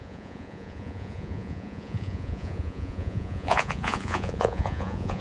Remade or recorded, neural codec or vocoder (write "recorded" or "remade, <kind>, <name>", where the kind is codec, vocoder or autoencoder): remade, vocoder, Vocos